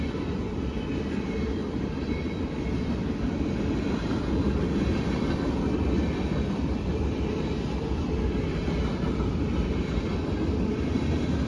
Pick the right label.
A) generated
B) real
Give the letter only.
A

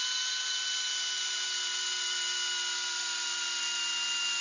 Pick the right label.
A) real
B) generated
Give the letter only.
A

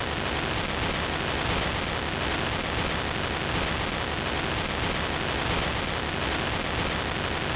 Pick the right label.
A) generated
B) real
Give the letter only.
B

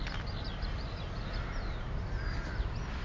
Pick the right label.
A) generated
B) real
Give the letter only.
B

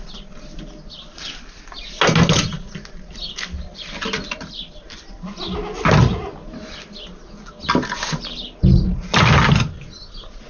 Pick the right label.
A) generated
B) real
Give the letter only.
B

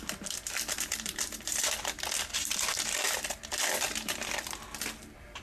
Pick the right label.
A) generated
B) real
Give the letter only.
A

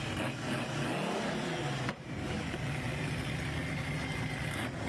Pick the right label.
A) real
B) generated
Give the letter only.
A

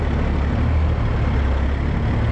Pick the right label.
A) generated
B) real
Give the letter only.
B